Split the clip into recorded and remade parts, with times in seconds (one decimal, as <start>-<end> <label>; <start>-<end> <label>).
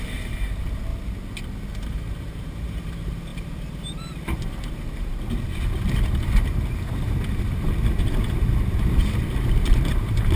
0.0-0.9 remade; 0.9-1.7 recorded; 1.7-10.4 remade